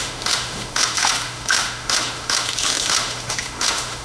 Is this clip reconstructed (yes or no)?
yes